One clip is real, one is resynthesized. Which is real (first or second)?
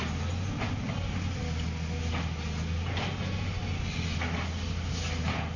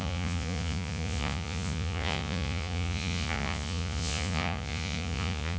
first